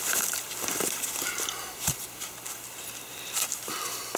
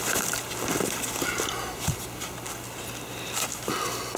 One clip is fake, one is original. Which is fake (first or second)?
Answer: first